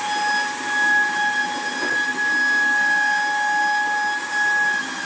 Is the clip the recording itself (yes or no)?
yes